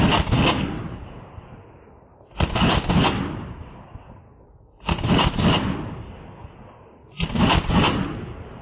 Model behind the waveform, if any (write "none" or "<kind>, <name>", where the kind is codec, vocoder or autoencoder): none